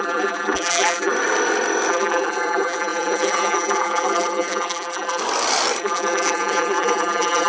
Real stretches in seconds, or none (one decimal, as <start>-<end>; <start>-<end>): 1.1-1.9; 5.2-5.8

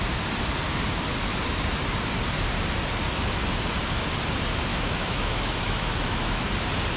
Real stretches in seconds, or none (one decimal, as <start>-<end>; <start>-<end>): 0.0-4.7; 6.5-7.0

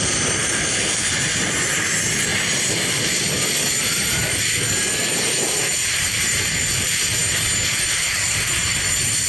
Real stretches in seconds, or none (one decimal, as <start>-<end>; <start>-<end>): 7.2-7.8

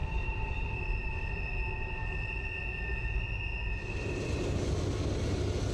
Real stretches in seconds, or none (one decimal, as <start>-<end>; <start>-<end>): 1.4-5.7

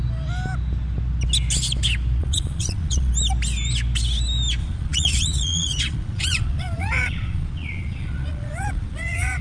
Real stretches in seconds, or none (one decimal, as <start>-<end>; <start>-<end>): 0.0-2.2; 3.1-4.6

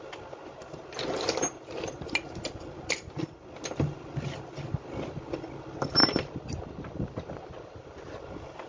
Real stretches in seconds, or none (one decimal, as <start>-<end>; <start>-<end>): 0.0-6.0; 8.2-8.7